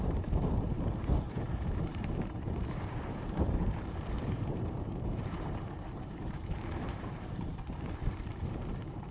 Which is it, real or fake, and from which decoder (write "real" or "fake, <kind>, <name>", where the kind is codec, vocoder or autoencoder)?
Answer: fake, vocoder, BigVGAN v2